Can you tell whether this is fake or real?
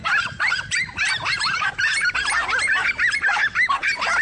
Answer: fake